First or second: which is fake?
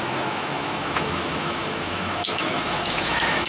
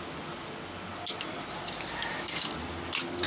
first